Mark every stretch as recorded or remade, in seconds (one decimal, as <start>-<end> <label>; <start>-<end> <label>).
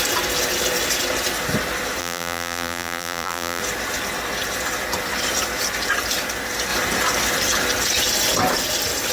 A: 0.0-2.0 recorded; 2.0-3.6 remade; 3.6-9.1 recorded